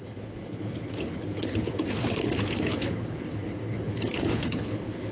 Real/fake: fake